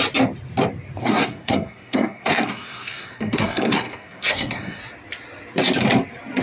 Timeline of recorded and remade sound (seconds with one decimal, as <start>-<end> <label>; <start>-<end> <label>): 0.0-1.0 recorded; 1.0-4.8 remade; 4.8-6.4 recorded